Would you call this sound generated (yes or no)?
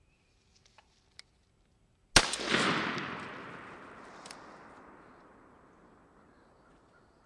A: no